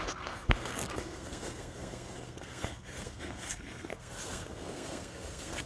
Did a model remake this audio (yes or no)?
yes